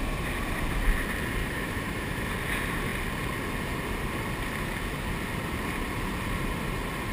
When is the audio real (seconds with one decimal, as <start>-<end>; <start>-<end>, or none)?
0.0-1.4; 2.2-7.1